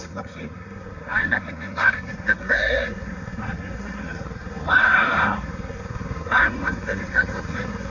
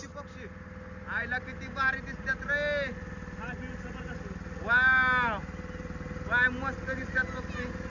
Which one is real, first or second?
second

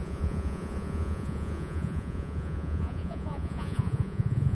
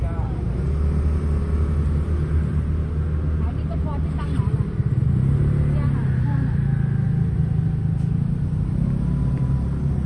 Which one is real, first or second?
second